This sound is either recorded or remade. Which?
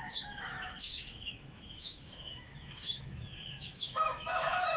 remade